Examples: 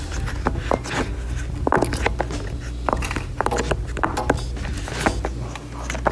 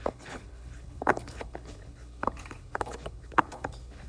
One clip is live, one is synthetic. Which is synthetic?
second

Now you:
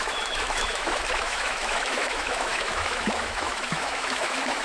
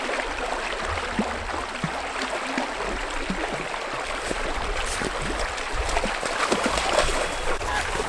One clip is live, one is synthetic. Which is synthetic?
first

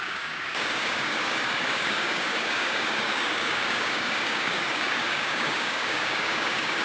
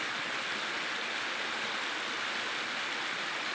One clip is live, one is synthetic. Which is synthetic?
first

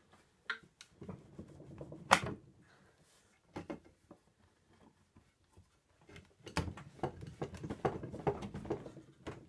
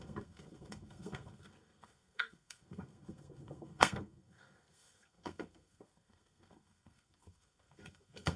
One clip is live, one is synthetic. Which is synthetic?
second